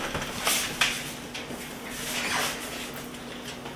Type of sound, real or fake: real